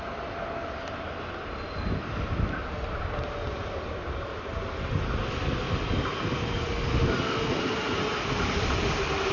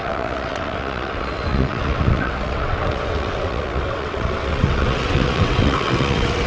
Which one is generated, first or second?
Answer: second